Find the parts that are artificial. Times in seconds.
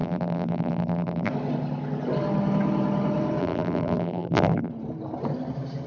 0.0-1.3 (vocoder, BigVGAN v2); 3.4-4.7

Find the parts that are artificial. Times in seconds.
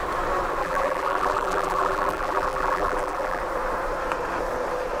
0.6-3.4 (vocoder, BigVGAN v2)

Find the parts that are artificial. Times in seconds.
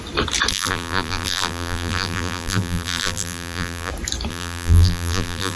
0.5-3.9 (vocoder, BigVGAN v2); 4.3-5.6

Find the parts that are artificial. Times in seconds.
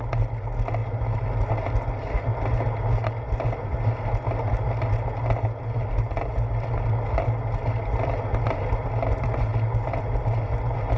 none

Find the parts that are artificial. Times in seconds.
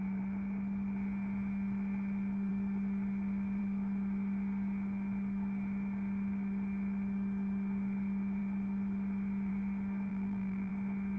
10.1-10.7 (vocoder, BigVGAN v2)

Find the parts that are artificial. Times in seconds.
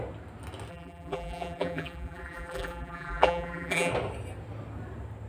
0.7-3.9 (vocoder, BigVGAN v2)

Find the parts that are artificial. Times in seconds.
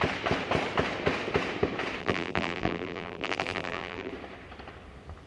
2.0-4.1 (vocoder, BigVGAN v2)